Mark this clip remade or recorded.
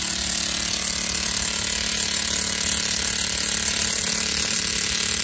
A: recorded